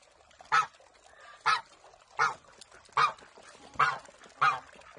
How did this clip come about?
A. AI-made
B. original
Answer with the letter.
B